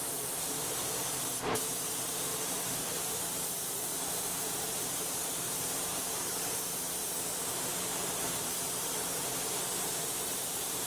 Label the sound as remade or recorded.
remade